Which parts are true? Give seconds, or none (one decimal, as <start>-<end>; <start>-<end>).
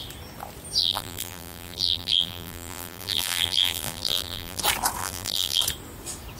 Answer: 0.0-0.8; 4.6-5.0; 5.6-6.4